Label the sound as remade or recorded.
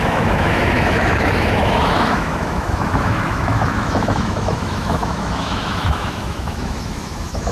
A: remade